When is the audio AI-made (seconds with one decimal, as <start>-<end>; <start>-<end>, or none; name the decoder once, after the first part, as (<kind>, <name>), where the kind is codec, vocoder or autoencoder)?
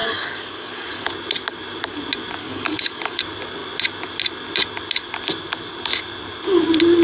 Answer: 0.0-1.1 (codec, DAC); 2.4-3.2